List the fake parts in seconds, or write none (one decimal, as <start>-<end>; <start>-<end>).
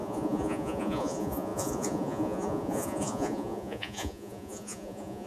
0.0-5.3